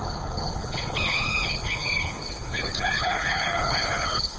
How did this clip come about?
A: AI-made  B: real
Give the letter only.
A